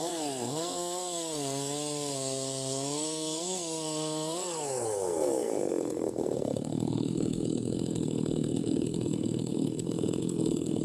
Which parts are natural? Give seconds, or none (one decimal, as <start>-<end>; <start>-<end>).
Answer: none